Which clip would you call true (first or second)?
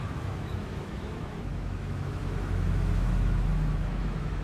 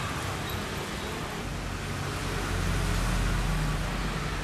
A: second